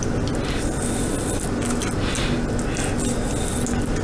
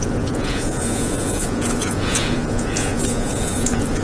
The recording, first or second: first